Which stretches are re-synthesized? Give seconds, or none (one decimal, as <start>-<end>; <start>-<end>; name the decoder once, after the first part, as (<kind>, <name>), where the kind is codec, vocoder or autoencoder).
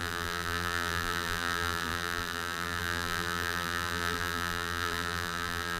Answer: 0.0-5.8 (vocoder, BigVGAN v2)